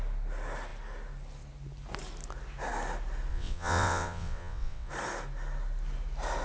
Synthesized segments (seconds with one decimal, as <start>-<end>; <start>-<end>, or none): 3.3-4.9